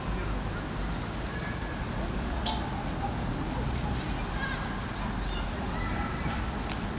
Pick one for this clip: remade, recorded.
recorded